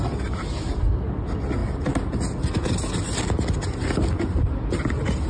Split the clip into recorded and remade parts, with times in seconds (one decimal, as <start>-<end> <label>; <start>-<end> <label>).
0.0-5.3 recorded